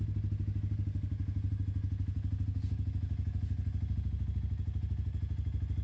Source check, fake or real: real